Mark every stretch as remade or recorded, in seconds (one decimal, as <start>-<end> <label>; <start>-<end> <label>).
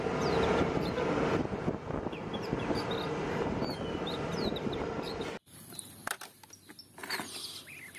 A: 0.0-8.0 recorded